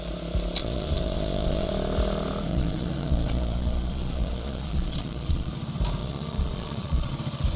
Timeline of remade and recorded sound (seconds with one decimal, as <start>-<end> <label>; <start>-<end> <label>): 0.0-0.6 recorded; 0.6-1.7 remade; 1.7-2.5 recorded; 2.5-5.5 remade; 5.5-6.0 recorded; 6.0-7.1 remade; 7.1-7.6 recorded